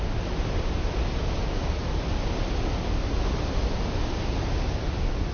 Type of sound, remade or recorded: recorded